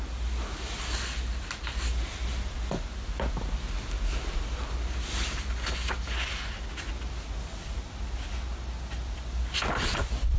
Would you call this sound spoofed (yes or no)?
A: no